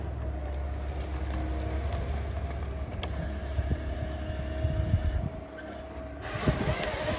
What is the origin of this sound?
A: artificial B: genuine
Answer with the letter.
B